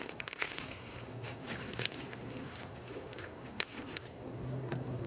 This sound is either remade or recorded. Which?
remade